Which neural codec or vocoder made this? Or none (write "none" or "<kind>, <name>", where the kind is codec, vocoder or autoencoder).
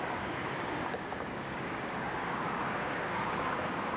codec, DAC